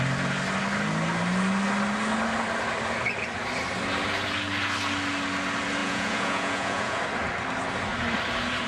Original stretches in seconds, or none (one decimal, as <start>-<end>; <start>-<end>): 0.0-5.8; 7.0-8.7